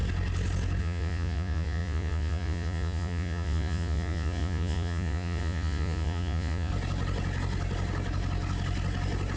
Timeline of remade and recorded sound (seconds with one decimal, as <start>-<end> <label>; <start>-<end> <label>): 0.0-0.8 recorded; 0.8-6.7 remade; 6.7-9.4 recorded